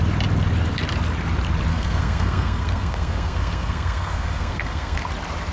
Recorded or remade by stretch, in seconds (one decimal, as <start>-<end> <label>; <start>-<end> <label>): 0.0-1.7 recorded; 1.7-5.0 remade; 5.0-5.5 recorded